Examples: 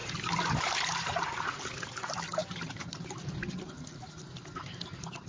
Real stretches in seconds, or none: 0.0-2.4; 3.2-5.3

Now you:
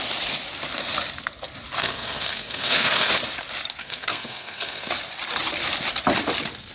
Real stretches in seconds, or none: 0.0-1.8; 3.1-3.8; 4.9-6.7